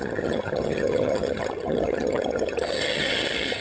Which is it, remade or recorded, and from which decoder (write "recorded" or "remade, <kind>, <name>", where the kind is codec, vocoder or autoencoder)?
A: remade, vocoder, HiFi-GAN